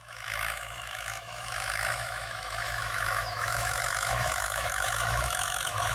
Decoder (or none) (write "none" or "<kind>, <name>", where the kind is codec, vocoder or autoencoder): autoencoder, DAC-VAE